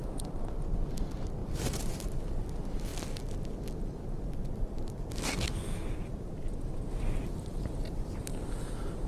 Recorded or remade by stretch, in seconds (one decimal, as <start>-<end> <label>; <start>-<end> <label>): 0.0-1.4 recorded; 1.4-2.2 remade; 2.2-9.1 recorded